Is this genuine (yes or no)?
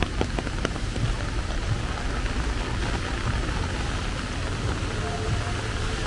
yes